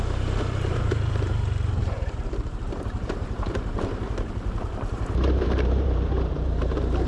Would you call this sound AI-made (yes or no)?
yes